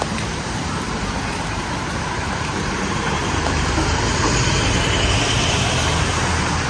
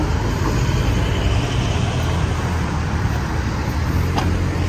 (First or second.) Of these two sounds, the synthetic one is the first